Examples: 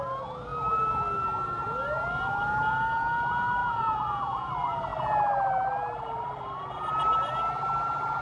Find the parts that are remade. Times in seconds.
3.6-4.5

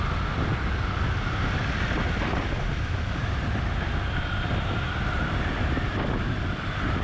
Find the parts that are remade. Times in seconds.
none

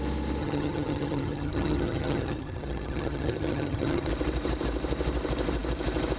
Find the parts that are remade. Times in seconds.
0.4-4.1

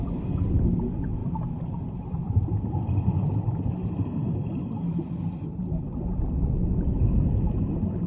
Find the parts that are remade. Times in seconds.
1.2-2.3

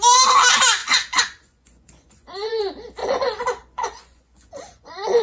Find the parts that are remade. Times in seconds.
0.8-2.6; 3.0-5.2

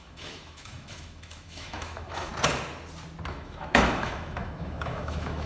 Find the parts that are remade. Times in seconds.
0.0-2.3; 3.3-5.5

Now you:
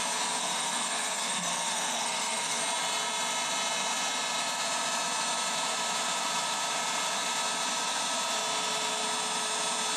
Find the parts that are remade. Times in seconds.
0.4-2.6

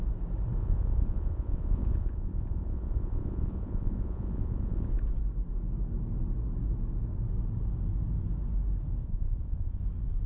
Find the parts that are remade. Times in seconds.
0.6-4.9; 9.0-9.8